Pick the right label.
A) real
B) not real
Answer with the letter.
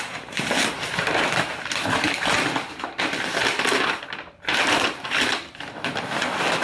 A